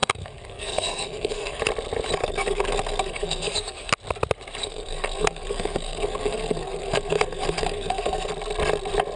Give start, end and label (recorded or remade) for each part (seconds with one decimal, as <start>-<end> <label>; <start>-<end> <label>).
0.0-1.6 remade; 1.6-2.2 recorded; 2.2-3.9 remade; 3.9-4.6 recorded; 4.6-8.3 remade; 8.3-9.2 recorded